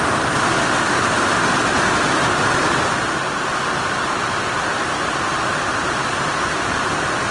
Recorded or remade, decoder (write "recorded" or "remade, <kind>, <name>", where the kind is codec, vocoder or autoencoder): recorded